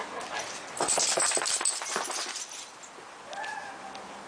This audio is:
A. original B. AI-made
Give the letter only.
A